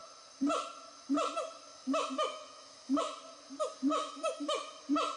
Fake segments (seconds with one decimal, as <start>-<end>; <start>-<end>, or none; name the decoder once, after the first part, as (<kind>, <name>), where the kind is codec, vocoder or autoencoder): 1.7-3.0 (autoencoder, DAC-VAE); 3.9-4.7